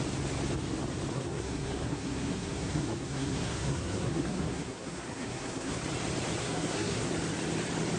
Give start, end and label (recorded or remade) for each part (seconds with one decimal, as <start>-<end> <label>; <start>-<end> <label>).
0.0-1.1 recorded; 1.1-5.8 remade; 5.8-6.4 recorded; 6.4-7.1 remade; 7.1-8.0 recorded